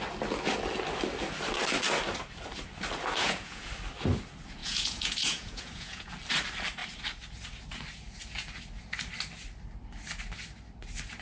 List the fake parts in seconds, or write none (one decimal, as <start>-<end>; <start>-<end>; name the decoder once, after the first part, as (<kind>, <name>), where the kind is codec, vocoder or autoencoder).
3.2-3.7 (vocoder, Vocos); 4.6-6.1